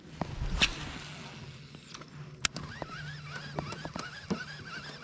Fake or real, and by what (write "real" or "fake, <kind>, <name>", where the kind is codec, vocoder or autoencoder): real